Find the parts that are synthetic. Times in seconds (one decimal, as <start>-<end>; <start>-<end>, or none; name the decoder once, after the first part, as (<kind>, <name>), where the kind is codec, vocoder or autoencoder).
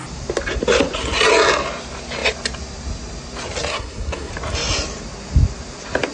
3.7-4.3 (codec, SNAC)